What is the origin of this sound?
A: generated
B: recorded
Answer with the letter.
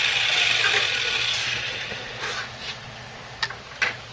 B